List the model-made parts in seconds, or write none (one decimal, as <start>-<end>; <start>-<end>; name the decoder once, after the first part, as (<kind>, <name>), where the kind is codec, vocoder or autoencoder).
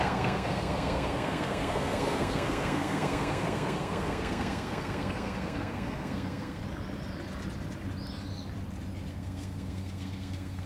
0.0-6.6 (codec, SNAC); 9.1-10.7